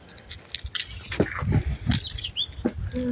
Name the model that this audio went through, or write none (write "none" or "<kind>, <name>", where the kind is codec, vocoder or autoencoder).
none